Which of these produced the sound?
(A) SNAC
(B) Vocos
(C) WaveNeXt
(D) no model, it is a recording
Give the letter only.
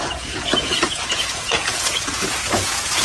B